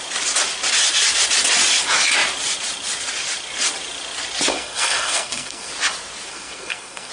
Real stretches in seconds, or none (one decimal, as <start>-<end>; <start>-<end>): 0.0-4.5; 5.7-6.3